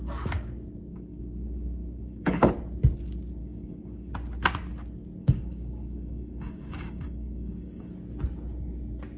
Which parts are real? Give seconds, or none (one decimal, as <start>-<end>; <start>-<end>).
0.0-0.9; 2.5-3.4; 4.1-5.2; 7.9-9.2